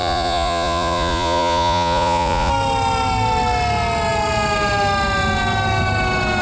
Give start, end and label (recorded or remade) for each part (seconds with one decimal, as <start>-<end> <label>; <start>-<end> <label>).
0.0-2.5 remade; 2.5-6.4 recorded